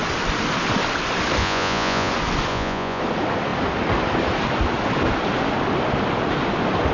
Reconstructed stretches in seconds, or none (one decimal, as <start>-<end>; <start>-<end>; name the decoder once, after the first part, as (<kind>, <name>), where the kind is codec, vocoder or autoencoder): 1.4-2.1 (vocoder, Vocos); 2.5-3.0